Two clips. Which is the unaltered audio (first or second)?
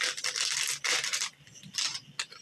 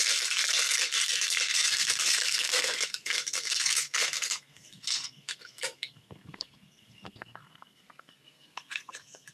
first